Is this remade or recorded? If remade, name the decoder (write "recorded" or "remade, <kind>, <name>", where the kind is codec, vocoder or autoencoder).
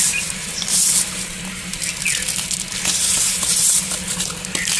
recorded